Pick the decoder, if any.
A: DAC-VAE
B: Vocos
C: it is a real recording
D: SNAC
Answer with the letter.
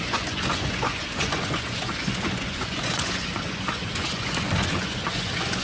B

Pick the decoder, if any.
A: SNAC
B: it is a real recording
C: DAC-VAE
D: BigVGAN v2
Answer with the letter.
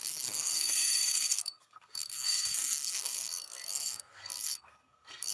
A